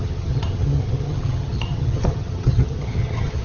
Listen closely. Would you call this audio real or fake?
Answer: fake